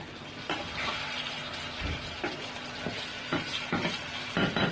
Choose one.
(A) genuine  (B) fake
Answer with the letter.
A